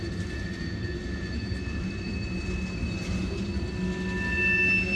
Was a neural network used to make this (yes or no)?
no